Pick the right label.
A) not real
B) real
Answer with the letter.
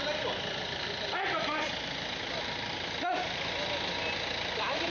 B